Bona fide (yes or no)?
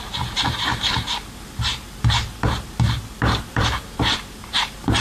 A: no